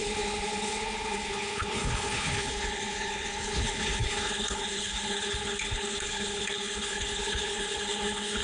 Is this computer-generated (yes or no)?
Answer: yes